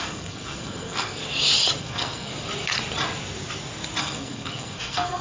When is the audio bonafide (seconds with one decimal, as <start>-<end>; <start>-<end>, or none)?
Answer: 1.2-1.8; 2.3-4.0